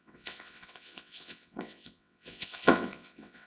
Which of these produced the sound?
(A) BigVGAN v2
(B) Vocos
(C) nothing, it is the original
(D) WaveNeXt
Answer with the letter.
D